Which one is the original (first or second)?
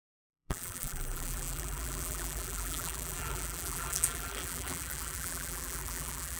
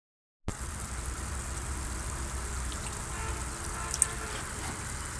second